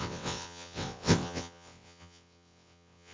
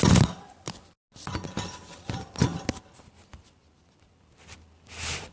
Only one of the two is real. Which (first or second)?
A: second